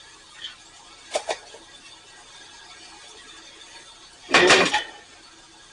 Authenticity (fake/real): real